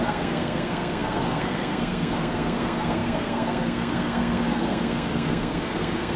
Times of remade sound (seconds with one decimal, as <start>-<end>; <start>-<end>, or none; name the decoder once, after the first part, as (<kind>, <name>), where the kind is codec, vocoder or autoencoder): 0.0-6.2 (codec, SNAC)